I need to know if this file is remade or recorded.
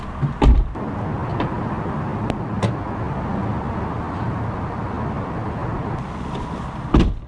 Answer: recorded